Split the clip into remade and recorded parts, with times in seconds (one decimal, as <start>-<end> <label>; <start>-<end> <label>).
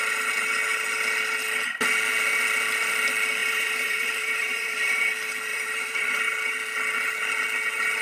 0.0-3.4 recorded; 3.4-5.0 remade; 5.0-5.5 recorded; 5.5-6.2 remade; 6.2-8.0 recorded